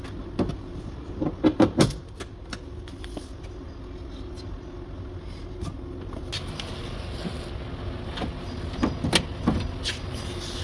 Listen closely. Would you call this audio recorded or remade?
recorded